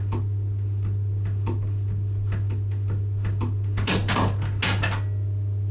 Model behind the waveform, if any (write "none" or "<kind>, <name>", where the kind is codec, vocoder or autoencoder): none